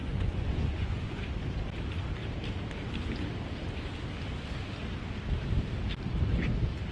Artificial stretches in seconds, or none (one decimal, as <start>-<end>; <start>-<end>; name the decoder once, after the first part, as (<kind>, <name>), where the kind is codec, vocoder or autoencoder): 0.0-1.2 (vocoder, Vocos)